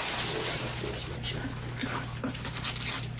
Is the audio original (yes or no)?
yes